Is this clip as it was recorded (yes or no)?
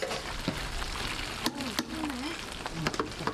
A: yes